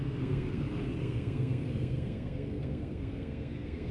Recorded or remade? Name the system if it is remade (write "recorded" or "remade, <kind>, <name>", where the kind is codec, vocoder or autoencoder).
remade, codec, SNAC